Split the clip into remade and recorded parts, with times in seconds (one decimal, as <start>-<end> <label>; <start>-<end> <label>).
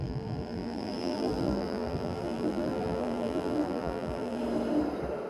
0.0-4.4 remade; 4.4-5.3 recorded